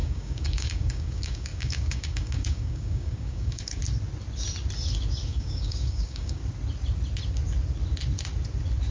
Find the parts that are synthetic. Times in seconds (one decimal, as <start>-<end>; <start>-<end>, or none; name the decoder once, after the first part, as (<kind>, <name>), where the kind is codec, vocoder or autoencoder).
0.0-3.8 (codec, DAC); 5.3-6.4